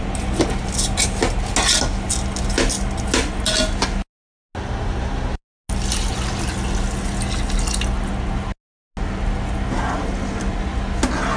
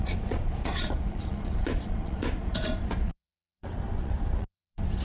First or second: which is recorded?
first